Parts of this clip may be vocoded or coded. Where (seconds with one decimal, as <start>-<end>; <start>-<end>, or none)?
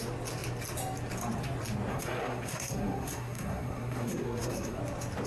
1.9-4.8